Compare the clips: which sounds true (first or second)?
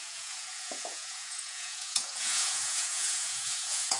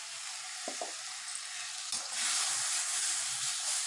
second